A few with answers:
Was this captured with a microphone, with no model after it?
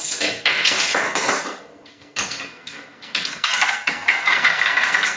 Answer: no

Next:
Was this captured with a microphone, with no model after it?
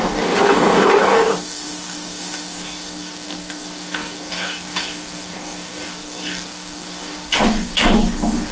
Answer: no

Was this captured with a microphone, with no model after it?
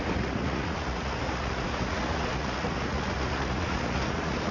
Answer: no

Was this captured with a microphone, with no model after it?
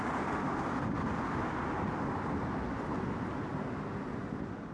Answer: yes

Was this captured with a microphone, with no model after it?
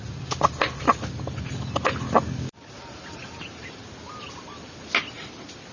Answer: yes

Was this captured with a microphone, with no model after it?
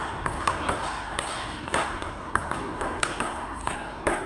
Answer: no